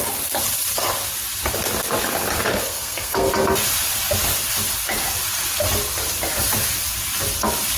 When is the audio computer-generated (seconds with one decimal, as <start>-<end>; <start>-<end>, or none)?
2.5-3.3